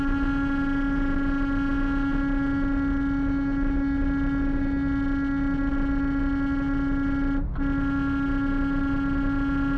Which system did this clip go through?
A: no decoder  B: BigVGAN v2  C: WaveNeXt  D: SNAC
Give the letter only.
A